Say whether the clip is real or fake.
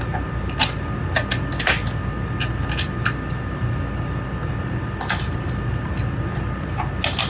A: real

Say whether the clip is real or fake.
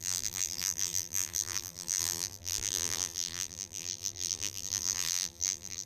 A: fake